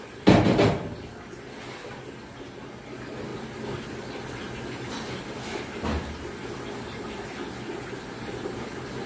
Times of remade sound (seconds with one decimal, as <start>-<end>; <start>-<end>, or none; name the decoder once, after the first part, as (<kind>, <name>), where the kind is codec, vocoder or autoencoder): none